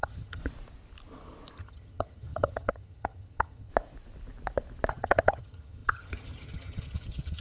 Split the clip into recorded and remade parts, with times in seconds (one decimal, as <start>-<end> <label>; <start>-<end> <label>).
0.0-0.4 remade; 0.4-1.6 recorded; 1.6-3.7 remade; 3.7-4.9 recorded; 4.9-7.4 remade